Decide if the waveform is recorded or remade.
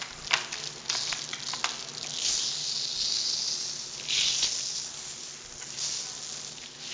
recorded